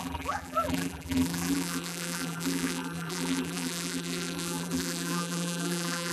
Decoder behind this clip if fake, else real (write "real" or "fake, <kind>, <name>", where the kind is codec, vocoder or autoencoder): fake, vocoder, BigVGAN v2